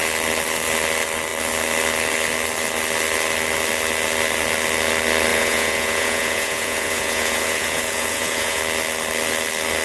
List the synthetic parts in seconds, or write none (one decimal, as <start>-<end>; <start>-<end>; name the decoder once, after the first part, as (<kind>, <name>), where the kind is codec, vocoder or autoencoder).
5.3-8.6 (vocoder, Vocos)